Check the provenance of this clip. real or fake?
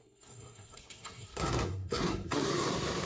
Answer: fake